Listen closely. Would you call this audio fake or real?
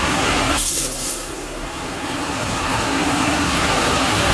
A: fake